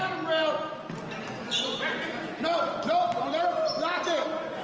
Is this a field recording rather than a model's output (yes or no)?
yes